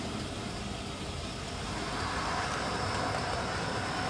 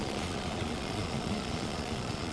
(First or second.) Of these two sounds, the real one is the first